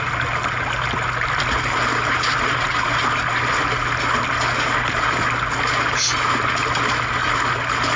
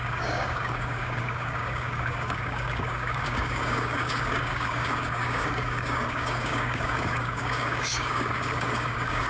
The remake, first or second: second